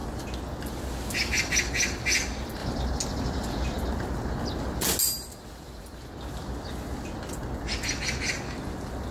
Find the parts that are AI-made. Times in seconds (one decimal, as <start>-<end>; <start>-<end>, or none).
none